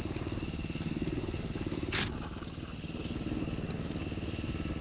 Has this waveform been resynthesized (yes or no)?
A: no